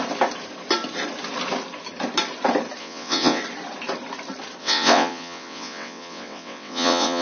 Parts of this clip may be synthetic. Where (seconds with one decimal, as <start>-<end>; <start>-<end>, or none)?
2.8-3.4; 4.6-7.2

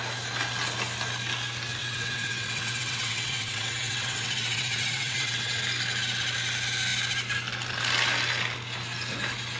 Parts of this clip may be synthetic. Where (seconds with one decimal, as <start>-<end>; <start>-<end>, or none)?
1.8-5.6